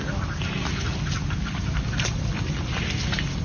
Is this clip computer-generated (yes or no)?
no